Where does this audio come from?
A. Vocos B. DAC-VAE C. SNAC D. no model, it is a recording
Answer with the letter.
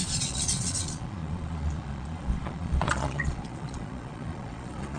A